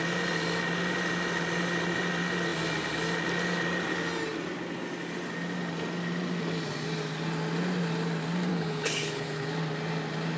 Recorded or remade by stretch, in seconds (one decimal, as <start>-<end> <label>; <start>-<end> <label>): 0.0-8.5 recorded; 8.5-9.5 remade; 9.5-10.4 recorded